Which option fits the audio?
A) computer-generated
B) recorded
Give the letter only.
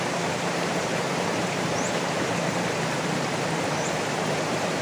A